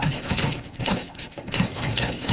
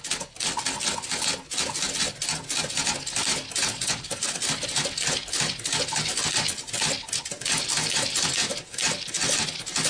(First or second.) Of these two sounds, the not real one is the first